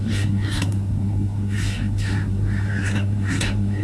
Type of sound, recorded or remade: remade